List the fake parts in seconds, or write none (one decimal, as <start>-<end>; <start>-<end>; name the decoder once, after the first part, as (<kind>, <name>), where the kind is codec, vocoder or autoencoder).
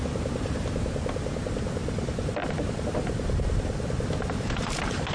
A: 1.8-5.1 (vocoder, BigVGAN v2)